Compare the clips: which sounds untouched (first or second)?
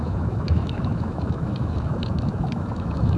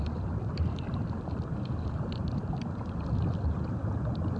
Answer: second